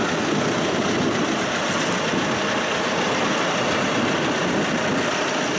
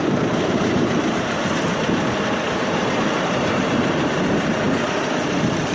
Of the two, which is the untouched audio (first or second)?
first